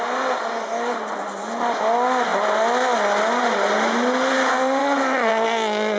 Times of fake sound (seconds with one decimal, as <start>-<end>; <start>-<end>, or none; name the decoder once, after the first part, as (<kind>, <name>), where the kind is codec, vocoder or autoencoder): 4.8-5.3 (autoencoder, DAC-VAE)